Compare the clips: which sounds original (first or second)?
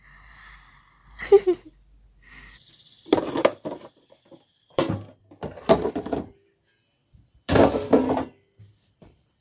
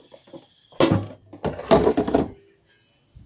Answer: second